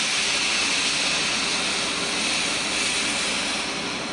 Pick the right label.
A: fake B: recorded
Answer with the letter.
B